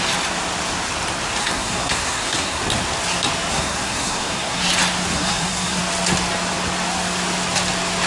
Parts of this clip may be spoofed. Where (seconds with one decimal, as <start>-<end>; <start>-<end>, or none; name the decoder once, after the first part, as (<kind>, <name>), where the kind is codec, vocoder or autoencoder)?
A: 1.4-2.6 (codec, SNAC); 3.5-4.6; 5.1-5.8